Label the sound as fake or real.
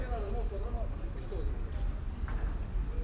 real